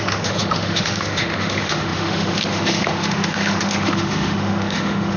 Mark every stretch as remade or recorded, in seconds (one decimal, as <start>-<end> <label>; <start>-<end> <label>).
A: 0.0-5.2 remade